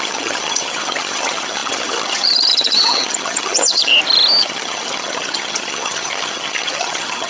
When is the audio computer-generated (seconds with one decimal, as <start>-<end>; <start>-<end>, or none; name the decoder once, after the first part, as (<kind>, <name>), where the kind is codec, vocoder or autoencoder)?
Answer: 0.0-3.9 (vocoder, HiFi-GAN); 4.4-7.3